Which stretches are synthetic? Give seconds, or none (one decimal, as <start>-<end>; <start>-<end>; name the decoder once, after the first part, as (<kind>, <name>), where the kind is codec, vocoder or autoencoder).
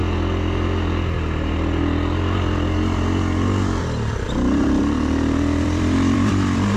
4.1-6.8 (vocoder, BigVGAN v2)